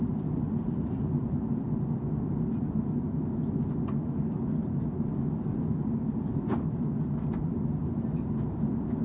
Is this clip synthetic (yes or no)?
no